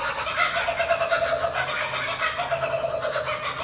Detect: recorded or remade recorded